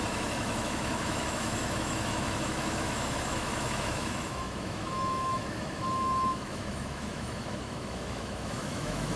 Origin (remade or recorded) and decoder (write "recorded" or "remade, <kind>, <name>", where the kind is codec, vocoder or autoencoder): remade, autoencoder, DAC-VAE